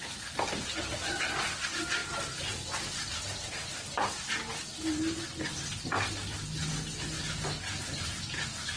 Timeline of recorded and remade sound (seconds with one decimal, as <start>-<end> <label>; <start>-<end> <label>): 0.0-8.8 recorded